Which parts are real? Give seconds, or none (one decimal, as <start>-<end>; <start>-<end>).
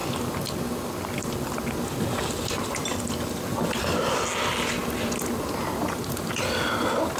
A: 0.0-7.2